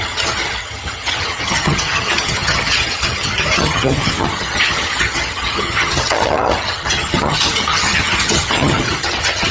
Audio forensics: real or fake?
fake